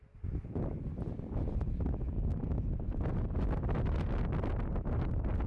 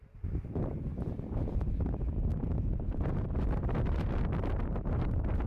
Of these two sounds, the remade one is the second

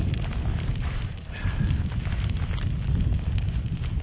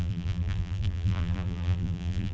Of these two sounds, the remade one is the second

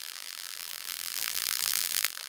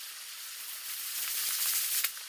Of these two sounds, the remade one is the first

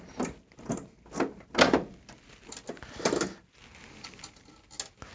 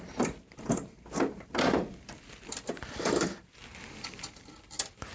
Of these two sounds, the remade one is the second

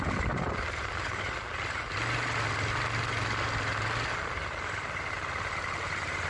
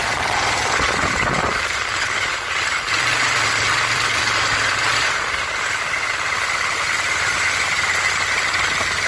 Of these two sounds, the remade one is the second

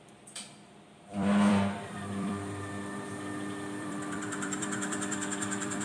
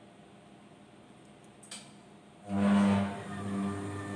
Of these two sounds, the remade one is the first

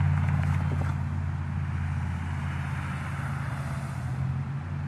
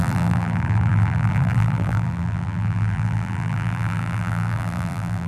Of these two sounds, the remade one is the second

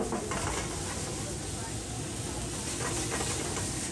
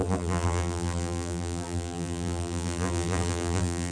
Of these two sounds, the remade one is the second